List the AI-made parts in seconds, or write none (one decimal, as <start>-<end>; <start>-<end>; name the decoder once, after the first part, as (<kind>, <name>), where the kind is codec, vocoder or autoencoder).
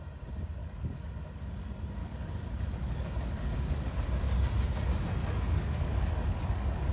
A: 0.6-1.4 (codec, DAC); 2.0-3.9; 5.2-6.9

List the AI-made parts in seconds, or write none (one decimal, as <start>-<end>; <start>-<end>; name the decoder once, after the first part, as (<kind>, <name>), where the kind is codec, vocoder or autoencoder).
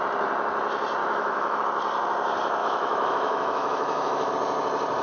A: 1.0-1.6 (autoencoder, DAC-VAE); 2.6-4.3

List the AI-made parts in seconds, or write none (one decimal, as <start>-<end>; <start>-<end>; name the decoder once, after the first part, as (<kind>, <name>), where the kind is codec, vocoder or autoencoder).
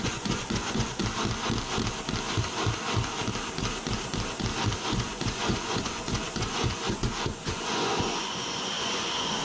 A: 0.0-1.0 (vocoder, Vocos); 4.9-9.4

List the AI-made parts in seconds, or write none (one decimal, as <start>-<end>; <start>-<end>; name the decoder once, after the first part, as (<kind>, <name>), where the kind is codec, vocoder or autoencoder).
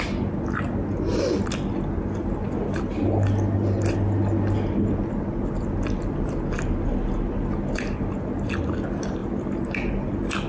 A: none